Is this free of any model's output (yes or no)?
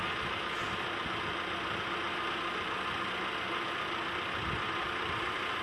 yes